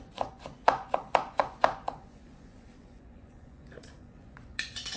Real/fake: fake